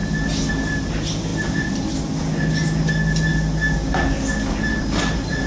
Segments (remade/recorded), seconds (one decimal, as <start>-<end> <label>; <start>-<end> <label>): 0.0-4.7 recorded; 4.7-5.5 remade